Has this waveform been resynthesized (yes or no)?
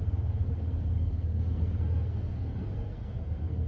yes